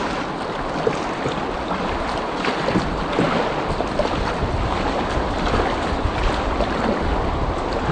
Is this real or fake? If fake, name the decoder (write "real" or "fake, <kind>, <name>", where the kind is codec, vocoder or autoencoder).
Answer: real